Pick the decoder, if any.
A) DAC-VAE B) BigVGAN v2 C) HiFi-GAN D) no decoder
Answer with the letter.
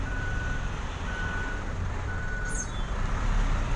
B